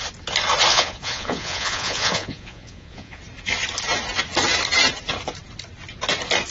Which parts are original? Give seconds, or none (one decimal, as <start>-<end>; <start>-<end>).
0.0-0.7; 3.2-6.5